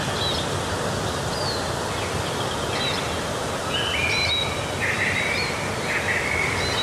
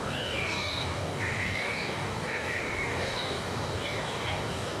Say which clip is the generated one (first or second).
second